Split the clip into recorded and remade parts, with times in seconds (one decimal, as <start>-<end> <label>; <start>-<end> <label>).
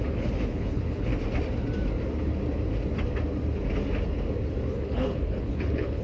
0.0-1.1 remade; 1.1-4.7 recorded; 4.7-6.0 remade